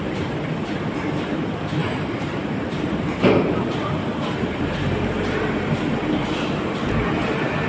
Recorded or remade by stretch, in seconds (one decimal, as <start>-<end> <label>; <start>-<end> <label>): 0.0-1.8 recorded; 1.8-5.8 remade; 5.8-7.7 recorded